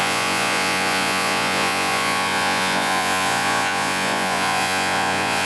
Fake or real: fake